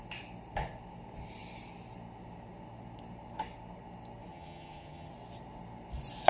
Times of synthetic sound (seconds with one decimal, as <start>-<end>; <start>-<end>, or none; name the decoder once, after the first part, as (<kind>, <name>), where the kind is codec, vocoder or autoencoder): 4.3-5.1 (vocoder, HiFi-GAN)